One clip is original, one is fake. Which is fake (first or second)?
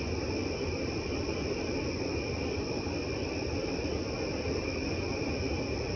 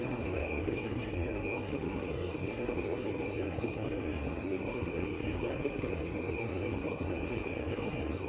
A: second